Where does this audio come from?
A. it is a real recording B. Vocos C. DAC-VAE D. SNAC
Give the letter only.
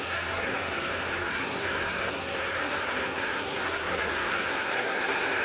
D